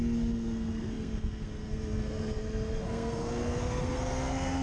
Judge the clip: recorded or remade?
remade